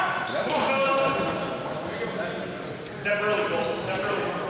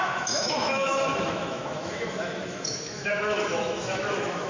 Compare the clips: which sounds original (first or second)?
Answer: first